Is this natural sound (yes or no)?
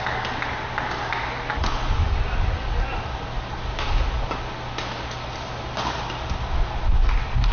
yes